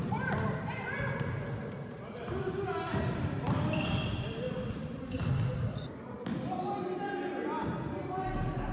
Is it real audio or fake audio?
real